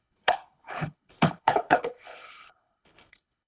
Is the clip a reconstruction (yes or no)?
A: yes